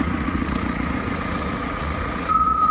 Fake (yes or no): yes